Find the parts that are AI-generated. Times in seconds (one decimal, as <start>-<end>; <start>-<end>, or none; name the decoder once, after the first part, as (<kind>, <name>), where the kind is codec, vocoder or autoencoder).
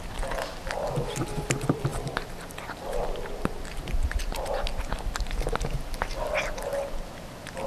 none